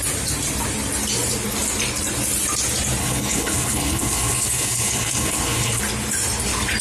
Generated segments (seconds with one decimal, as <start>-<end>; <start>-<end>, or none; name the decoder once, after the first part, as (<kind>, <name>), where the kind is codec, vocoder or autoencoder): 3.0-5.8 (codec, HILCodec)